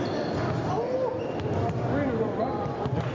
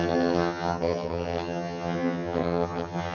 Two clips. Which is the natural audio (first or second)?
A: first